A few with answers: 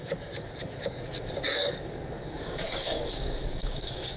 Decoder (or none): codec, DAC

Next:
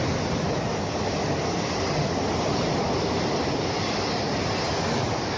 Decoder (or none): none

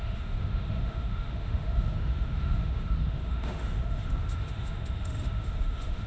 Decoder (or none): autoencoder, DAC-VAE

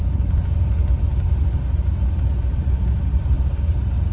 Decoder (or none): none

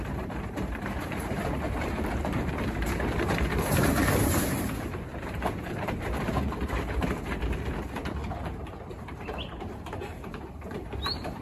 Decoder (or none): vocoder, BigVGAN v2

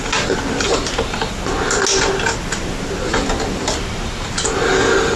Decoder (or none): none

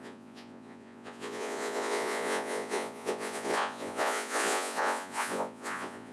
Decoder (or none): vocoder, Vocos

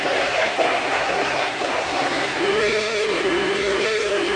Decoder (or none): codec, SNAC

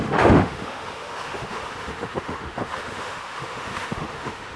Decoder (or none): autoencoder, DAC-VAE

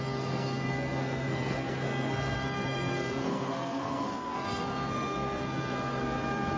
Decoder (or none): codec, SNAC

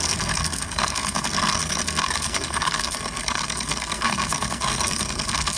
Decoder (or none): codec, SNAC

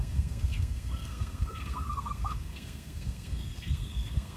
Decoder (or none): codec, SNAC